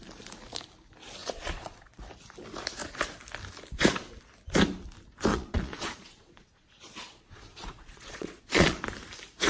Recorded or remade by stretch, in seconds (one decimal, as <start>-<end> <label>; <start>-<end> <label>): 0.0-1.2 recorded; 1.2-2.0 remade; 2.0-5.3 recorded; 5.3-8.8 remade; 8.8-9.5 recorded